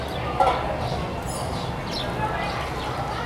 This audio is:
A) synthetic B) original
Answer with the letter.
B